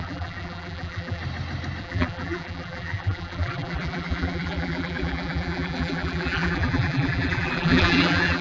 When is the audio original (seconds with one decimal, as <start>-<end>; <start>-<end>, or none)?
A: 1.2-1.8